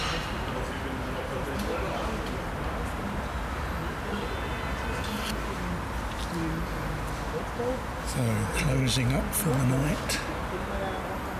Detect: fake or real real